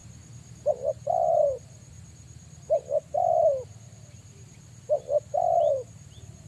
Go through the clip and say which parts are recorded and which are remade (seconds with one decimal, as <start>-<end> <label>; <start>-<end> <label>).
0.0-0.7 recorded; 0.7-6.5 remade